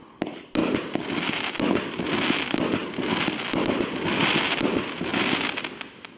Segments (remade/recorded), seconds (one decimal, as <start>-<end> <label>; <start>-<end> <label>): 0.0-6.2 recorded